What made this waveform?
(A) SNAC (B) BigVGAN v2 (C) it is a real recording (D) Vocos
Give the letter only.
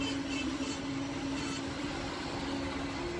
C